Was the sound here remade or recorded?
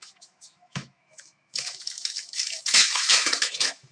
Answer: remade